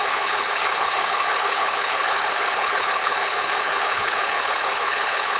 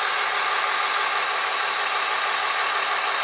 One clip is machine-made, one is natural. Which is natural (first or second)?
second